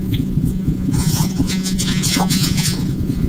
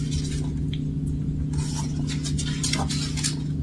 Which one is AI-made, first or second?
first